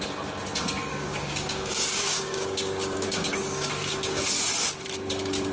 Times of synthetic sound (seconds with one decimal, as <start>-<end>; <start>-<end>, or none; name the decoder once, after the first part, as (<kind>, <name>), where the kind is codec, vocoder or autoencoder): 0.9-4.2 (codec, DAC)